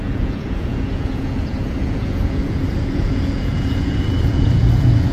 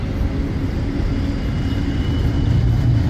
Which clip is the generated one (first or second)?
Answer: first